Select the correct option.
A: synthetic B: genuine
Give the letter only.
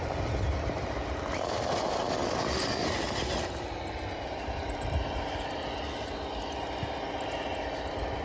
B